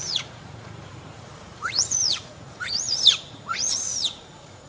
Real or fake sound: fake